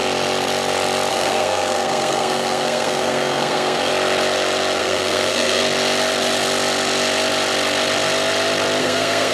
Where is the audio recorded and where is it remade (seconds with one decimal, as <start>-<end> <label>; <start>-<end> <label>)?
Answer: 0.0-1.1 recorded; 1.1-3.9 remade; 3.9-4.8 recorded; 4.8-5.6 remade; 5.6-8.8 recorded; 8.8-9.3 remade